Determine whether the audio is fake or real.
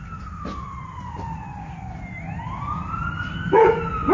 real